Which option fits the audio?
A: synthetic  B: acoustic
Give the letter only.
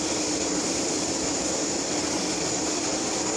A